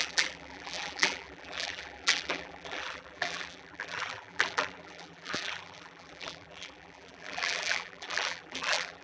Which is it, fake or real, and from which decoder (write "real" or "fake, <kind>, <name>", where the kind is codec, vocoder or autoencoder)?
fake, vocoder, BigVGAN v2